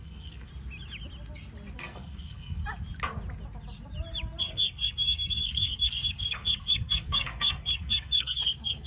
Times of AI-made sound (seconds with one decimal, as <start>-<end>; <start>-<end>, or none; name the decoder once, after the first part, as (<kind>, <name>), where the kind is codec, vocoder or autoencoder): 0.0-0.5 (codec, SNAC); 1.8-2.6; 4.4-8.9